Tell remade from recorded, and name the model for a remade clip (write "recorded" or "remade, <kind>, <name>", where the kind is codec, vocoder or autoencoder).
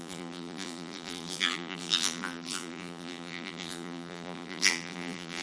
remade, vocoder, BigVGAN v2